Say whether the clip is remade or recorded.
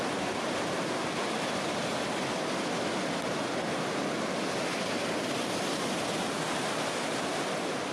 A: recorded